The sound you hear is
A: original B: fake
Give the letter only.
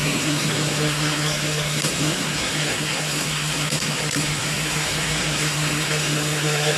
B